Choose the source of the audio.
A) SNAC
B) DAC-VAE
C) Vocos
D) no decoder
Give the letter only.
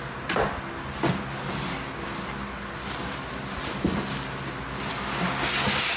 D